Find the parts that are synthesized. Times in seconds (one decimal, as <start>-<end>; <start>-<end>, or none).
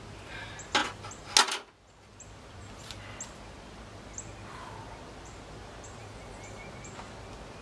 6.0-6.6